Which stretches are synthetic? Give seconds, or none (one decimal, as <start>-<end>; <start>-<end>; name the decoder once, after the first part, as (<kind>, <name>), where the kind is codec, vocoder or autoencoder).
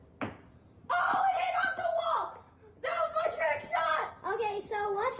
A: 1.1-2.0 (vocoder, Vocos); 2.9-4.1